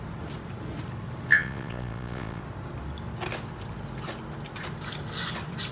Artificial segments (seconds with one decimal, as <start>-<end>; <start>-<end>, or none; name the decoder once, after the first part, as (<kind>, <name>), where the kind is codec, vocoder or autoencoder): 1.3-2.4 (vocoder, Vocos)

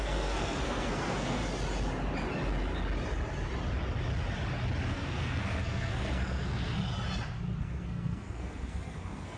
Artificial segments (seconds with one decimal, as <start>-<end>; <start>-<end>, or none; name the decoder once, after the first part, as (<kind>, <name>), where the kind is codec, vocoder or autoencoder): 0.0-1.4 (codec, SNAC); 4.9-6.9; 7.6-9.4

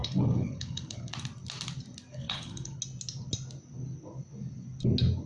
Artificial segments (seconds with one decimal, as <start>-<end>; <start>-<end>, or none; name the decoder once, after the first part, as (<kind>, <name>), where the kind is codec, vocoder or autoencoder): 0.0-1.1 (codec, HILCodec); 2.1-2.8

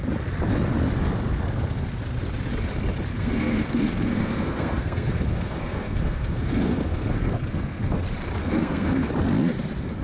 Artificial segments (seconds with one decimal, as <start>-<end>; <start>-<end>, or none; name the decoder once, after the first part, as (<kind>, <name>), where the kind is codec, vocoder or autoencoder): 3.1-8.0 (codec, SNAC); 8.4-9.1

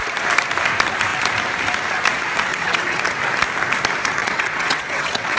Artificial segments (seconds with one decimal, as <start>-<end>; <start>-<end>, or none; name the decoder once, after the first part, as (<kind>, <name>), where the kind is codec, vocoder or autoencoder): 2.5-3.0 (vocoder, WaveNeXt); 4.2-5.4

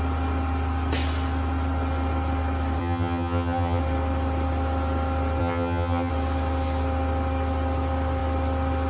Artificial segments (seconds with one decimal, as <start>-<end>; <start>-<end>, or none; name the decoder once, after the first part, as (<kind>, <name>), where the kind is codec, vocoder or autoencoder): 2.8-3.8 (vocoder, HiFi-GAN); 5.4-6.1